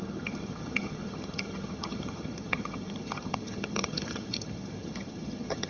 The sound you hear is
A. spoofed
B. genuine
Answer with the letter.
A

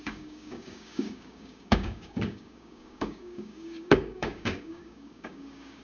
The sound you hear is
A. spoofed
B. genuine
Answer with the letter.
A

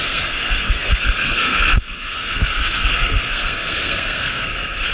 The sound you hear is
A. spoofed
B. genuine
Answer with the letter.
A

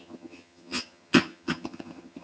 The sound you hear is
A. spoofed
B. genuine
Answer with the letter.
A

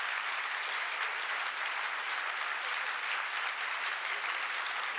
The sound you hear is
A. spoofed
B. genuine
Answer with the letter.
B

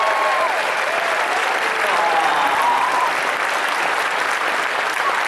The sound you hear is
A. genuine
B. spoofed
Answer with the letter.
B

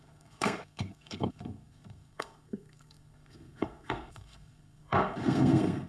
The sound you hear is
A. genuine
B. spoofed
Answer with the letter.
B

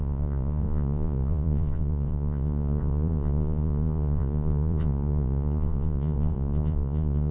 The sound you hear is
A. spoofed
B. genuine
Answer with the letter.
A